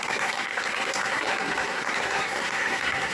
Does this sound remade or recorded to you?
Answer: remade